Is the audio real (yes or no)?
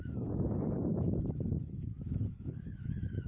no